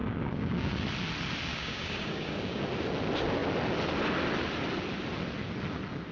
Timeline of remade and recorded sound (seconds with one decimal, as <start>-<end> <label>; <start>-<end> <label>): 0.0-0.7 remade; 0.7-1.5 recorded; 1.5-2.6 remade; 2.6-6.1 recorded